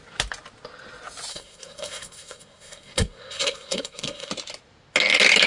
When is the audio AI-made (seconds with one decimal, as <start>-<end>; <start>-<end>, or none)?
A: 1.3-4.3